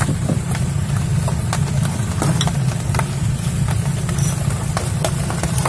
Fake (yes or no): no